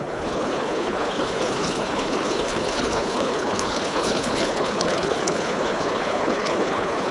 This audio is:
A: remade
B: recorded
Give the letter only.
A